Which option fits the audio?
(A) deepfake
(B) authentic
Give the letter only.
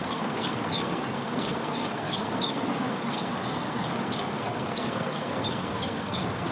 A